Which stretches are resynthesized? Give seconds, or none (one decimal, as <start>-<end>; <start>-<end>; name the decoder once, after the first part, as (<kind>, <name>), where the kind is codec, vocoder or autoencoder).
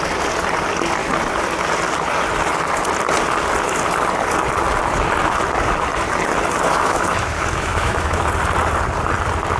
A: 6.7-8.2 (autoencoder, DAC-VAE)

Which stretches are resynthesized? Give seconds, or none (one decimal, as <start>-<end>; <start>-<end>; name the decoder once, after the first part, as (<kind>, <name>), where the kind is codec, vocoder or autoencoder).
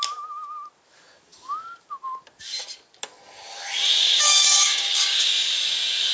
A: 4.0-5.3 (codec, DAC)